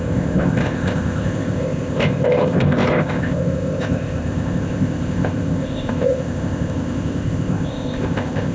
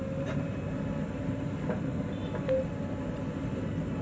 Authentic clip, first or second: second